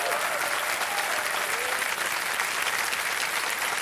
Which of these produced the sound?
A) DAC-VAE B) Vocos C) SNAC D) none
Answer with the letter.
D